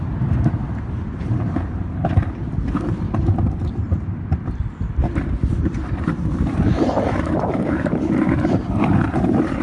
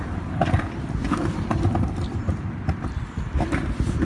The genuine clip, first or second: second